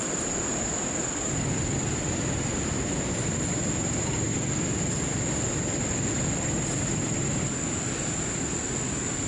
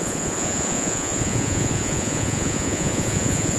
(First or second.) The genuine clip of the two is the first